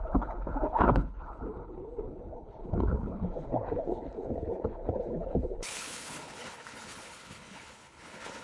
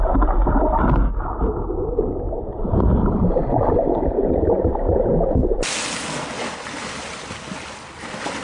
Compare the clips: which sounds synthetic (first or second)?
first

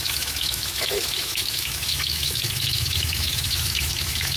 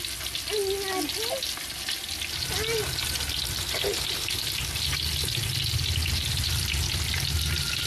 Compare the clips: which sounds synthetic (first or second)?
first